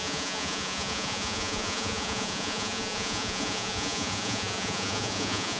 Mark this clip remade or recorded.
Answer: remade